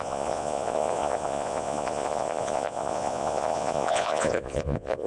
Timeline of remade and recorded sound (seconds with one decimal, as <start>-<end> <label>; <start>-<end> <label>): 0.0-5.1 remade